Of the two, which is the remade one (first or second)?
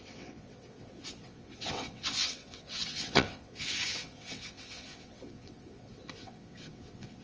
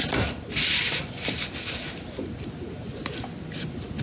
first